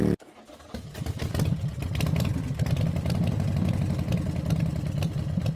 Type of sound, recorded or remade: recorded